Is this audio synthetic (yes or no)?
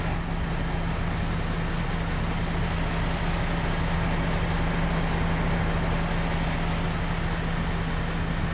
no